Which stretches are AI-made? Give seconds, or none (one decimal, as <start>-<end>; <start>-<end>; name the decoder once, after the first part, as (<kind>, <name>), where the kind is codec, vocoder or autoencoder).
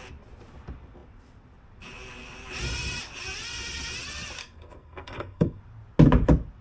4.4-5.6 (codec, SNAC)